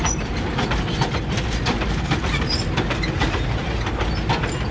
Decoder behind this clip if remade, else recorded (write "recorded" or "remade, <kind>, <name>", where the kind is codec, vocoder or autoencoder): recorded